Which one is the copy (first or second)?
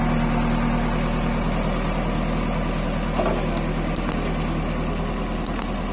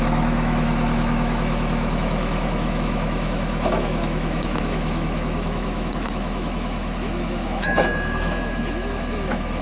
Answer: second